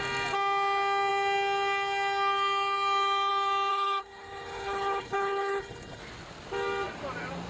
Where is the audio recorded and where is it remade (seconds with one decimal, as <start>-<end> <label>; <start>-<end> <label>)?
0.0-3.7 recorded; 3.7-6.0 remade; 6.0-7.5 recorded